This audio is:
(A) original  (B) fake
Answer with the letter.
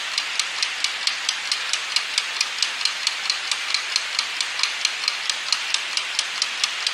A